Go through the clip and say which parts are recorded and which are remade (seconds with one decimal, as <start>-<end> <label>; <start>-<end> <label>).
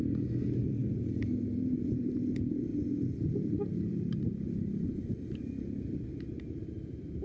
0.0-0.8 recorded; 0.8-2.1 remade; 2.1-7.2 recorded